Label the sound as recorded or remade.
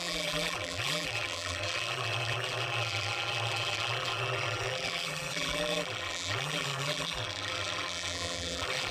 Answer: remade